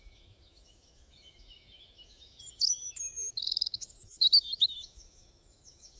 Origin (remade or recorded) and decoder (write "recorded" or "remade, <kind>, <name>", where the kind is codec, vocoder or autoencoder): remade, autoencoder, DAC-VAE